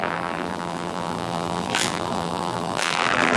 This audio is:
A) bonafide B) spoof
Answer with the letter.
B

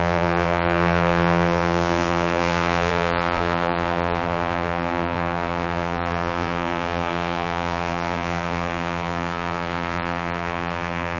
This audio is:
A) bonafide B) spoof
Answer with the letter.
B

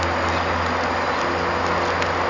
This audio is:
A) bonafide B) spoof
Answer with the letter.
A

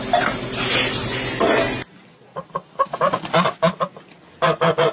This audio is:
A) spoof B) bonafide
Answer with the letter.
B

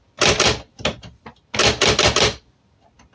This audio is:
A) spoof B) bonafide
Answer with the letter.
A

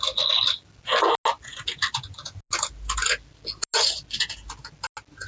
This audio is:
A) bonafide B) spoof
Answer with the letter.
A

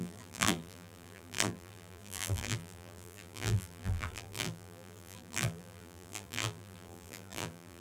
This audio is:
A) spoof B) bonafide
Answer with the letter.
A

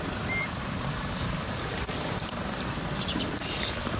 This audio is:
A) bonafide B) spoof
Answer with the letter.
B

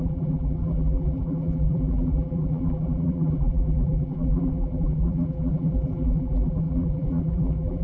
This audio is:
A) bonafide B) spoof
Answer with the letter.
B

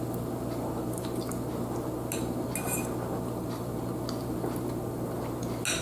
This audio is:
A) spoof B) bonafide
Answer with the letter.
B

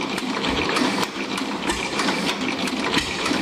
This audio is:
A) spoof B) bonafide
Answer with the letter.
A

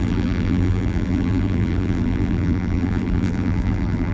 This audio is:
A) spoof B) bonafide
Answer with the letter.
A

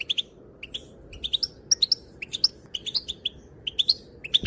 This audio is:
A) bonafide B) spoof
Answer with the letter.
A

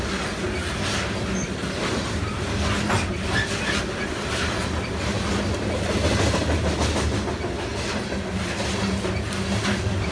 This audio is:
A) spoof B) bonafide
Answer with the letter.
B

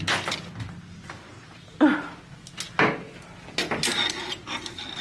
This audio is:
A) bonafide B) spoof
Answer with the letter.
A